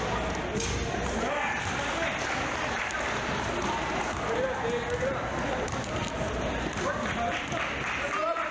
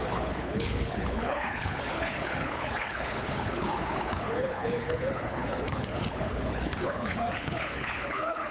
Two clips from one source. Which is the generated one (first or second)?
second